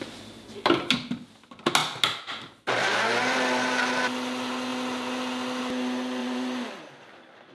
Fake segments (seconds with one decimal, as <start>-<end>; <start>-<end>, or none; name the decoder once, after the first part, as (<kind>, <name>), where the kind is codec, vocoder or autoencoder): 6.2-6.8 (vocoder, BigVGAN v2)